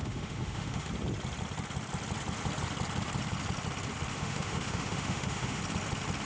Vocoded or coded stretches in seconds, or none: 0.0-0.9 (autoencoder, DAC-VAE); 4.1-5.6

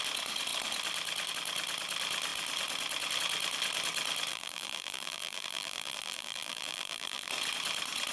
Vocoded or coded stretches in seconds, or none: 4.3-7.3 (vocoder, BigVGAN v2)

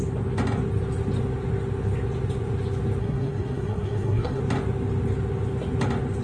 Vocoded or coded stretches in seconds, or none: 3.0-4.4 (codec, SNAC)

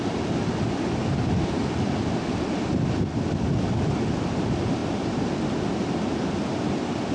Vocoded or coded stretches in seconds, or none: none